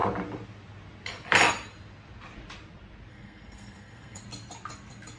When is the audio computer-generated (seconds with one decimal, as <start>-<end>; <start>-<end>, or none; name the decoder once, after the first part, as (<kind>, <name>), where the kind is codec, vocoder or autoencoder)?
3.1-4.2 (codec, SNAC)